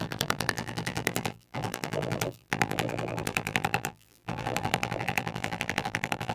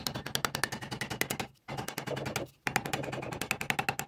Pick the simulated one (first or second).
first